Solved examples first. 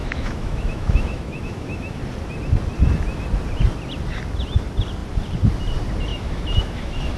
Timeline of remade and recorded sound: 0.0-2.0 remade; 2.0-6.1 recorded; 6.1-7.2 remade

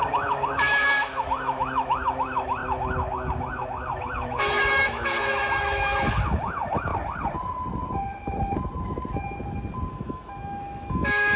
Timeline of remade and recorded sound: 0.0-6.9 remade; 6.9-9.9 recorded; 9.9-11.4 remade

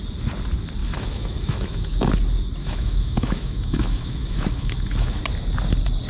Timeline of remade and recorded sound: 0.0-0.8 recorded; 0.8-2.1 remade; 2.1-2.6 recorded; 2.6-5.2 remade; 5.2-6.1 recorded